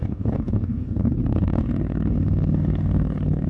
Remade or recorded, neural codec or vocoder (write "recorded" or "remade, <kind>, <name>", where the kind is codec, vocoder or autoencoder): remade, codec, DAC